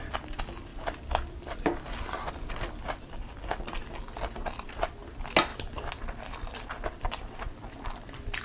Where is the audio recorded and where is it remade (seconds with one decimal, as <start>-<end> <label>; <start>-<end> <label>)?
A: 0.0-8.4 recorded

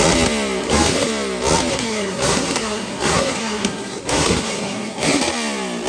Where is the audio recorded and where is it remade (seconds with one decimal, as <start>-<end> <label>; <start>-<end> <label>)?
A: 0.0-0.6 recorded; 0.6-1.1 remade; 1.1-1.7 recorded; 1.7-5.2 remade; 5.2-5.9 recorded

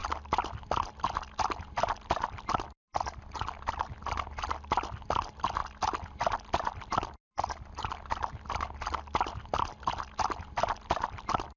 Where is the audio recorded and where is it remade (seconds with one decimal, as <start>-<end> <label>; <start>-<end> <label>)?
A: 0.0-11.6 recorded

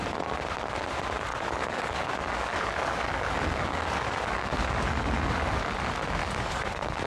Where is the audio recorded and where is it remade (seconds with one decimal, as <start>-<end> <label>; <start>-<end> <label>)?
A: 0.0-1.3 recorded; 1.3-5.6 remade; 5.6-6.2 recorded; 6.2-7.1 remade

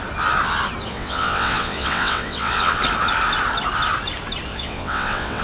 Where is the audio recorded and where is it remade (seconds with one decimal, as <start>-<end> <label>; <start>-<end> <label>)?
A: 0.0-0.9 recorded; 0.9-2.8 remade; 2.8-4.5 recorded; 4.5-5.4 remade

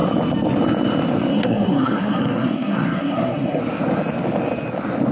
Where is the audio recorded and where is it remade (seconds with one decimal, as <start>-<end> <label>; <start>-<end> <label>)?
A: 0.0-1.3 recorded; 1.3-3.6 remade; 3.6-5.1 recorded

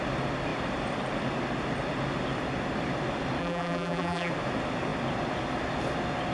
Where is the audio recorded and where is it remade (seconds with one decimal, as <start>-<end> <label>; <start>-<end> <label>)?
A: 0.0-3.4 recorded; 3.4-4.3 remade; 4.3-6.3 recorded